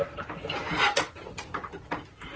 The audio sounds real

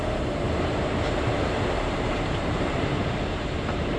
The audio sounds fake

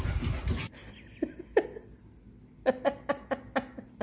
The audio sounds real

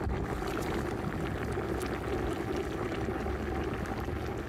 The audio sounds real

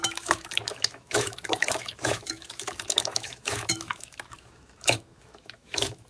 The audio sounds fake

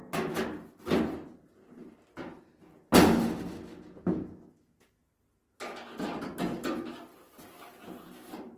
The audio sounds real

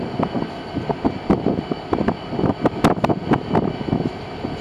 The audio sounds real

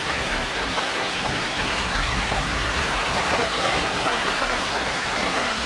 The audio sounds fake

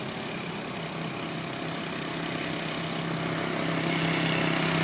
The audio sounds real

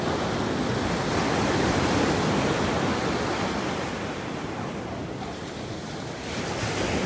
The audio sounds real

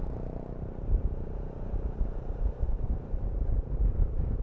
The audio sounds fake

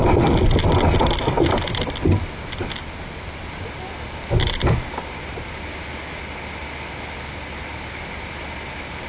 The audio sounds real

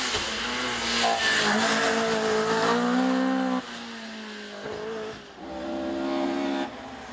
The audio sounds real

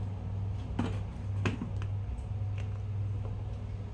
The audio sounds real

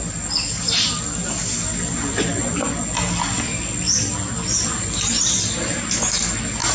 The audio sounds real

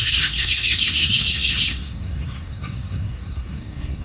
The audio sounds fake